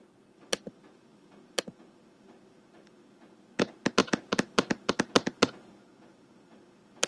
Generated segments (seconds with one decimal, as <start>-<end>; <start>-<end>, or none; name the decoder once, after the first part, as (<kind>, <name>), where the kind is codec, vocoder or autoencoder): none